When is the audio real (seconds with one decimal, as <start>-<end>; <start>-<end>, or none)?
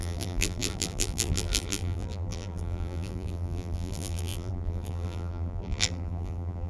none